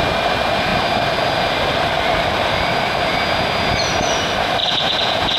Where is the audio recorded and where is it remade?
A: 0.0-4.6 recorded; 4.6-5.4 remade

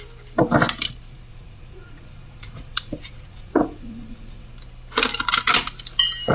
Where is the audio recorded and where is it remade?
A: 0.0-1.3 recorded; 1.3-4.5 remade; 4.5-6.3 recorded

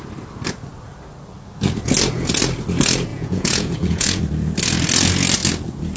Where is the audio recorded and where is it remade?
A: 0.0-3.1 recorded; 3.1-4.2 remade; 4.2-6.0 recorded

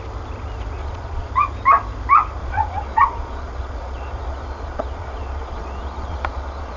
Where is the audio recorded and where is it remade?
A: 0.0-0.8 recorded; 0.8-1.3 remade; 1.3-2.4 recorded; 2.4-6.8 remade